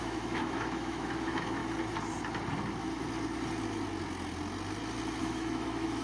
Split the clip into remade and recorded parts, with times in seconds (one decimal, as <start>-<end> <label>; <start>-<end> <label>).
0.0-1.6 remade; 1.6-5.2 recorded; 5.2-6.0 remade